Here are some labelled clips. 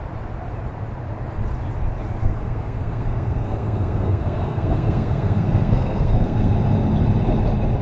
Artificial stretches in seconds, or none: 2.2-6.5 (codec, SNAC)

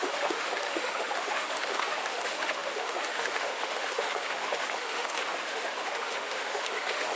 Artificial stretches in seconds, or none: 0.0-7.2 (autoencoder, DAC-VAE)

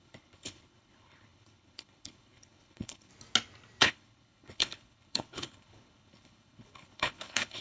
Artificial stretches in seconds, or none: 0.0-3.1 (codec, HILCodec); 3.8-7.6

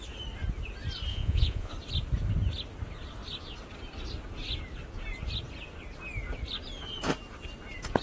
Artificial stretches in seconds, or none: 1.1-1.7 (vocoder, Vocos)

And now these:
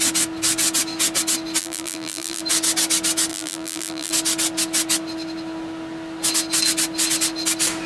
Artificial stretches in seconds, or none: 1.6-2.4 (vocoder, BigVGAN v2); 3.3-4.1

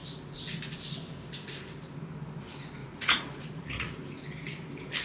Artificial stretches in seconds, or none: 2.8-3.9 (vocoder, Vocos)

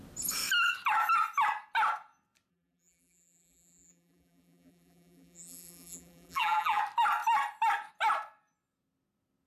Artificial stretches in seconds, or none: 2.5-6.8 (vocoder, BigVGAN v2)